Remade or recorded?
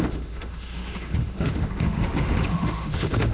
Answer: remade